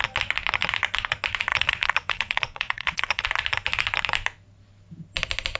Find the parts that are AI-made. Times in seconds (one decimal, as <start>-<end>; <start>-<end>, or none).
1.5-3.2